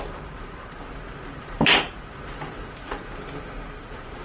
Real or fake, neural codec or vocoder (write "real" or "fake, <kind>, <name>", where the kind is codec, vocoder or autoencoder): fake, vocoder, BigVGAN v2